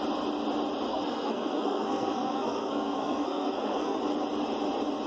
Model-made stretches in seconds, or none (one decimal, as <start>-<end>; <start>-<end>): 0.9-4.0